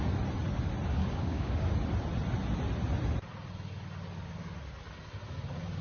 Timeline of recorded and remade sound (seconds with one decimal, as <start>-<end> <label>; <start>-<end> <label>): 0.0-1.0 recorded; 1.0-1.7 remade; 1.7-5.8 recorded